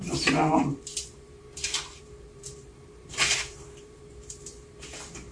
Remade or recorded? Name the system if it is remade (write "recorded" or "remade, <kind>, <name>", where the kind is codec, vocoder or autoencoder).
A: remade, vocoder, BigVGAN v2